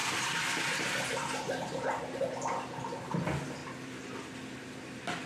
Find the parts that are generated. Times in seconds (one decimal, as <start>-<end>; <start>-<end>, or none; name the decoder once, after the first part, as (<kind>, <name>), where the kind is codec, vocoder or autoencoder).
0.0-2.0 (vocoder, BigVGAN v2)